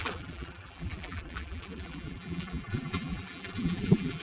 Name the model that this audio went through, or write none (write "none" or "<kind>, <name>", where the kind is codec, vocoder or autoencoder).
vocoder, BigVGAN v2